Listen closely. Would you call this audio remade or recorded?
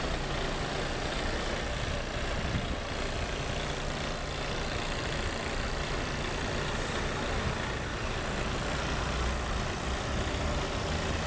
recorded